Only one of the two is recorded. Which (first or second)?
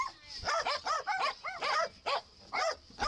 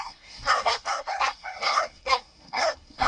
first